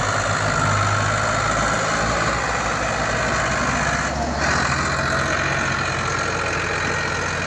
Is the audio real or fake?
real